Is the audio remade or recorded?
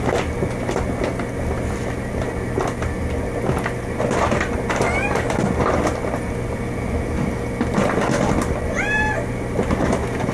recorded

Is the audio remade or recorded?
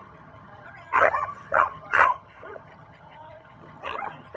remade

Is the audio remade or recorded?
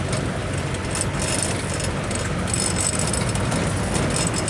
recorded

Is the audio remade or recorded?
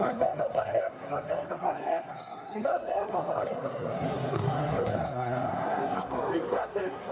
remade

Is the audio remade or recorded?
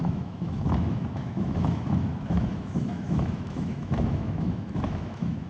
remade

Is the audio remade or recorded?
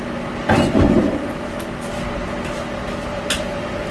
recorded